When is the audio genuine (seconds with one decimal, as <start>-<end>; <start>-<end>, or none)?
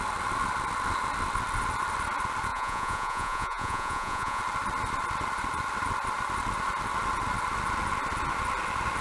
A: 0.0-2.5; 4.4-9.0